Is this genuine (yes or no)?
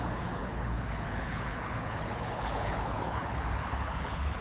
no